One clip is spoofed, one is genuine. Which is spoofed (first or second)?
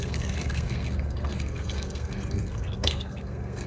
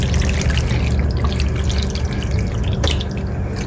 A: first